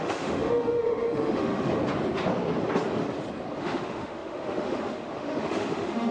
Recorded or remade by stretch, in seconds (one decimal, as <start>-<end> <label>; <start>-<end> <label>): 0.0-1.7 remade; 1.7-3.6 recorded; 3.6-6.1 remade